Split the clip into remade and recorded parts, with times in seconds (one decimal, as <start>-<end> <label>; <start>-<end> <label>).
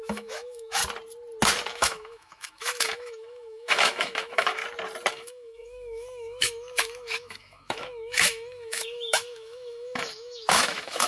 0.0-0.8 remade; 0.8-1.7 recorded; 1.7-4.6 remade; 4.6-5.1 recorded; 5.1-11.1 remade